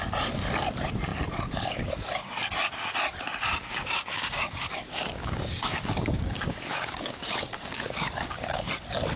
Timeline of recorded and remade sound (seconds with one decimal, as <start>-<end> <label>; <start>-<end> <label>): 0.0-3.6 recorded; 3.6-8.7 remade; 8.7-9.2 recorded